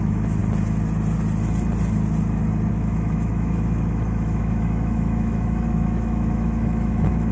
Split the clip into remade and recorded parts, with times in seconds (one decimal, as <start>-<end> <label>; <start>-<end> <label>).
0.0-0.4 remade; 0.4-2.7 recorded; 2.7-7.3 remade